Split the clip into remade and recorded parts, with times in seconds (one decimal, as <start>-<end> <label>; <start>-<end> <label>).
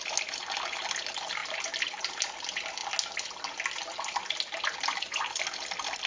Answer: 0.0-6.1 recorded